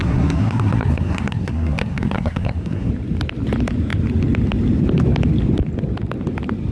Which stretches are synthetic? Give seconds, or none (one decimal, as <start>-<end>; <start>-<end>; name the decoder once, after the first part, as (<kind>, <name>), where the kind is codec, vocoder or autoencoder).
0.0-2.9 (codec, SNAC)